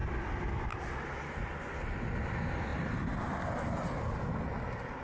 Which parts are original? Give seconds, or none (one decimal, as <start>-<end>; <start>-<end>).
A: 0.0-5.0